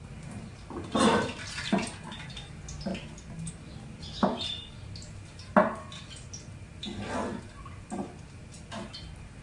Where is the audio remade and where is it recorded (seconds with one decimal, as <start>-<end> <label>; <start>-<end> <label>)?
0.0-9.4 recorded